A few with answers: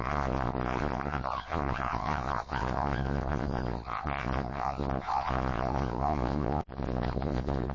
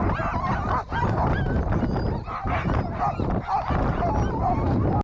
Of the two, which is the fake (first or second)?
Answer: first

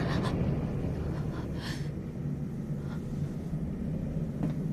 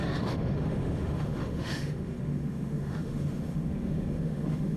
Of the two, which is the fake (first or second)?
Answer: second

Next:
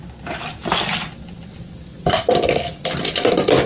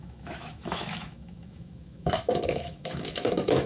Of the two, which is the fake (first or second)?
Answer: second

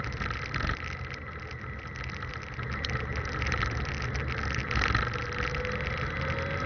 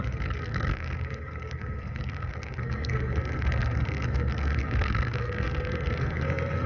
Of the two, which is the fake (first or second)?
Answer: second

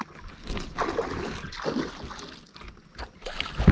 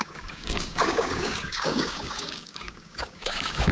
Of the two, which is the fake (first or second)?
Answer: second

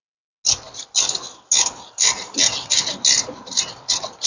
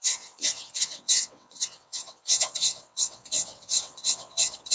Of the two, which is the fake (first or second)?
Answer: second